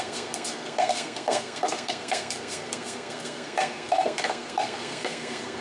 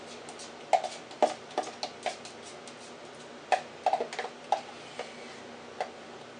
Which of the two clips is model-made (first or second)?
first